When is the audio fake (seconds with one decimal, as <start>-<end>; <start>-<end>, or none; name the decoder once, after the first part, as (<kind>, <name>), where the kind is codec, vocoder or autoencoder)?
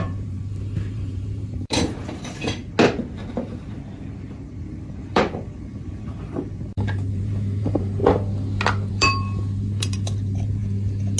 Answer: 0.0-2.6 (vocoder, BigVGAN v2); 4.9-8.0; 8.9-10.6